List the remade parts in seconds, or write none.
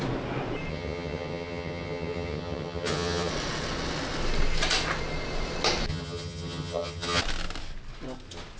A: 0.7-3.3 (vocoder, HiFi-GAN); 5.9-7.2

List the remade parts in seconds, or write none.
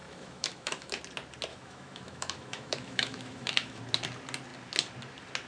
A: 0.0-1.0 (autoencoder, DAC-VAE); 1.5-3.8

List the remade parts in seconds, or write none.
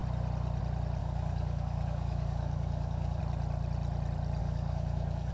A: 1.0-3.2 (codec, DAC); 4.4-5.3